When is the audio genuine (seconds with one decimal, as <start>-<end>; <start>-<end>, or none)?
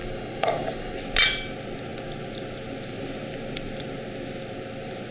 1.0-5.1